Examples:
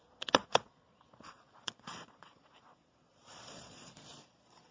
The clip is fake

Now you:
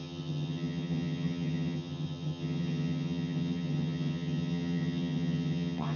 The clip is fake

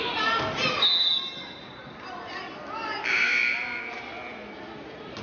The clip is real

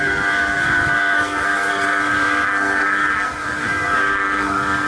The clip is fake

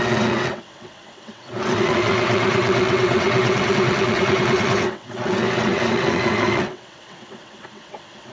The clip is fake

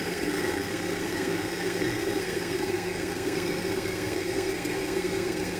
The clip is fake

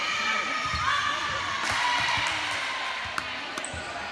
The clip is real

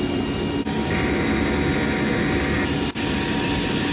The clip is real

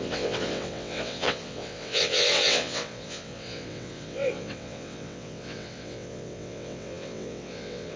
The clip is fake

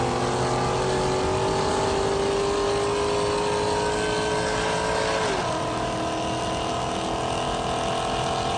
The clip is real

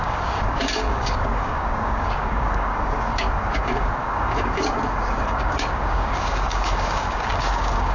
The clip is fake